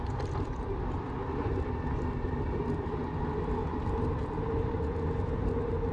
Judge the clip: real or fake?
real